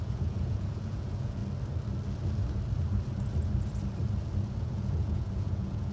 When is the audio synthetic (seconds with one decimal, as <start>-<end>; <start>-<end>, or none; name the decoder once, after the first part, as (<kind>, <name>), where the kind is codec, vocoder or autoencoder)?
0.0-1.4 (vocoder, Vocos); 4.6-5.9